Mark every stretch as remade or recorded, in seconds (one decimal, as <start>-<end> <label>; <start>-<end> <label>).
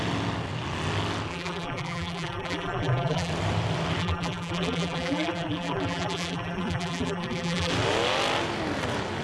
0.0-1.3 recorded; 1.3-3.3 remade; 3.3-4.0 recorded; 4.0-7.7 remade; 7.7-9.2 recorded